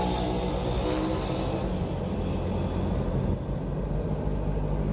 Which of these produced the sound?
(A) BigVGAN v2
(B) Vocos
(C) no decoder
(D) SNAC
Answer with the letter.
C